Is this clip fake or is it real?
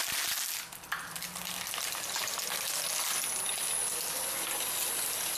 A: real